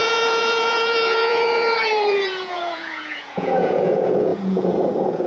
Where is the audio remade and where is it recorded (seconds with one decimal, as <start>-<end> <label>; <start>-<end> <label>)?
0.0-5.3 remade